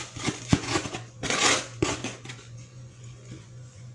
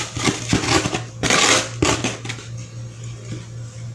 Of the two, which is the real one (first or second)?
second